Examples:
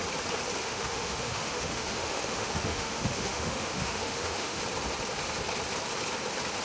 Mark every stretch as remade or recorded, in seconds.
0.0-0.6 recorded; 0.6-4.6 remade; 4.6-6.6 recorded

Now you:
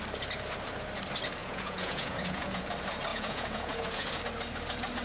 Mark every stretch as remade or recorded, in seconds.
0.0-1.4 recorded; 1.4-2.6 remade; 2.6-3.1 recorded; 3.1-4.2 remade; 4.2-5.0 recorded

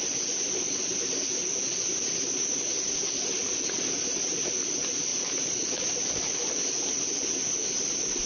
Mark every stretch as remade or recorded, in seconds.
0.0-8.2 recorded

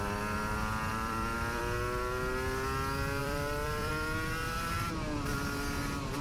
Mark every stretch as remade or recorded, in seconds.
0.0-0.9 recorded; 0.9-1.6 remade; 1.6-3.2 recorded; 3.2-3.9 remade; 3.9-6.2 recorded

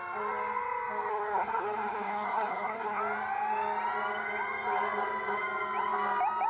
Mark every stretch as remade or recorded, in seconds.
0.0-1.1 recorded; 1.1-3.0 remade; 3.0-6.5 recorded

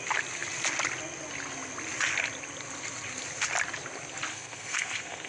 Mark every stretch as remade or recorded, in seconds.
0.0-4.3 recorded; 4.3-5.3 remade

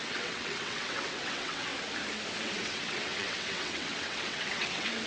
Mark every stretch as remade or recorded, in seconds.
0.0-1.7 remade; 1.7-2.4 recorded; 2.4-5.1 remade

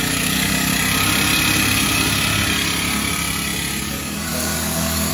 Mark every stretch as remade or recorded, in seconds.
0.0-0.7 remade; 0.7-3.8 recorded; 3.8-5.1 remade